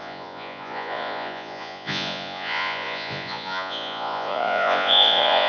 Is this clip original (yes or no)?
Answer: no